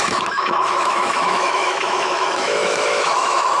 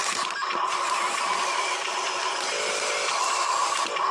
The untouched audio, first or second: second